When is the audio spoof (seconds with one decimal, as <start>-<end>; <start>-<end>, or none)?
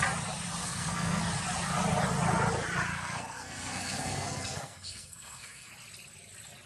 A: 0.6-1.2; 2.9-5.7